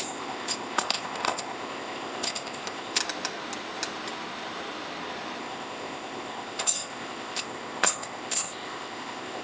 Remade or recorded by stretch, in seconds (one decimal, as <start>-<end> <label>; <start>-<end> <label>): 0.0-3.0 remade; 3.0-5.4 recorded; 5.4-9.4 remade